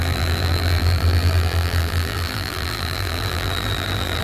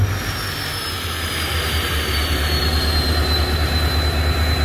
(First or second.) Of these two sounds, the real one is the second